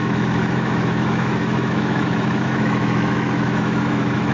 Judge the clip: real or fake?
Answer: fake